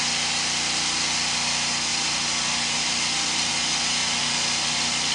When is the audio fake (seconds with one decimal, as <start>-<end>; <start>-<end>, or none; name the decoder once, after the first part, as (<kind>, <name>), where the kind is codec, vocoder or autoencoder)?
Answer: none